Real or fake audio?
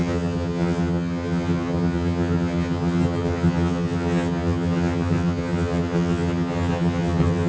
fake